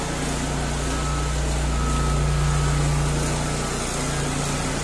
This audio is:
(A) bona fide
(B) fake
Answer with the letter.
A